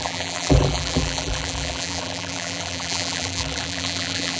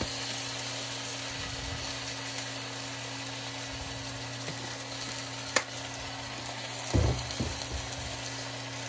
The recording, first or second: second